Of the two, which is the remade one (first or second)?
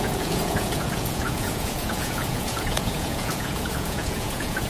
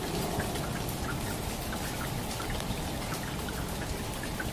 first